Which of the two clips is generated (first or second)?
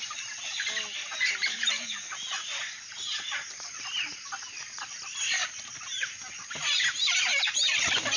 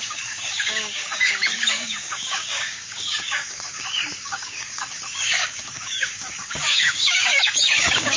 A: second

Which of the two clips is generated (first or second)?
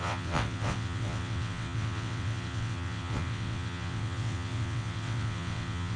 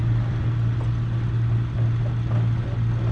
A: first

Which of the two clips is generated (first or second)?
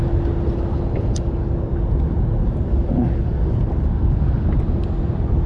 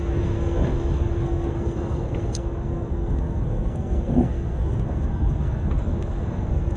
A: second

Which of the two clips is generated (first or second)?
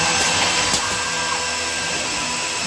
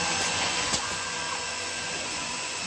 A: second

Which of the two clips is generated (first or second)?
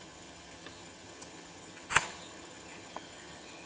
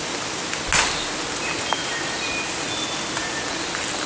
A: first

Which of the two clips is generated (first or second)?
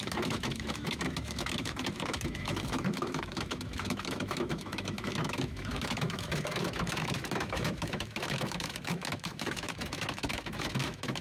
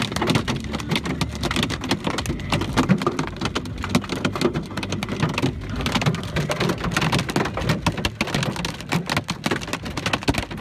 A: first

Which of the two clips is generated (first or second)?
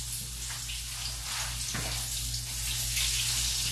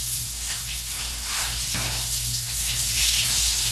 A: second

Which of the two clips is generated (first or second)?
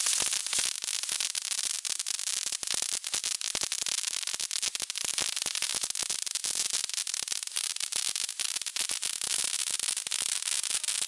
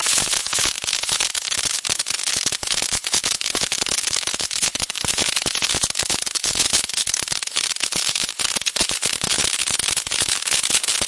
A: second